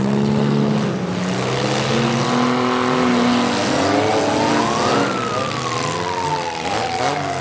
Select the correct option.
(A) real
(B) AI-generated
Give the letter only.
A